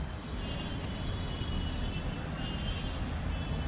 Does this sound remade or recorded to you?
recorded